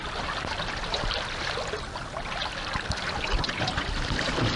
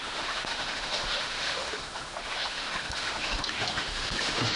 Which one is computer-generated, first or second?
second